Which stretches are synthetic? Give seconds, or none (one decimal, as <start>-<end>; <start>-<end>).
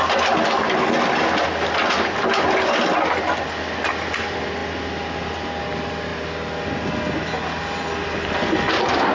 none